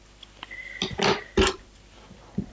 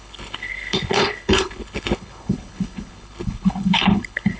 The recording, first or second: first